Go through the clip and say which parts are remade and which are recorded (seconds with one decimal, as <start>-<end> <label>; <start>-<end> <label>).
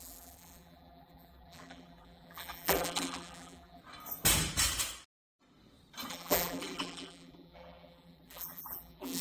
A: 0.0-3.8 remade; 3.8-6.1 recorded; 6.1-9.2 remade